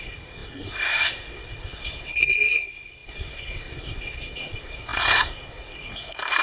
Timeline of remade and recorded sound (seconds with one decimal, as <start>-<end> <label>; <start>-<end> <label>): 0.0-6.4 remade